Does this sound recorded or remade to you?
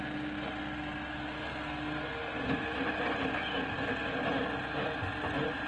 recorded